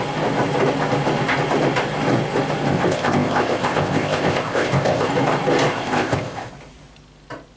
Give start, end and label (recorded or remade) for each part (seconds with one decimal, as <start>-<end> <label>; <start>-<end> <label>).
0.0-2.7 recorded; 2.7-5.1 remade; 5.1-5.7 recorded; 5.7-6.5 remade; 6.5-7.6 recorded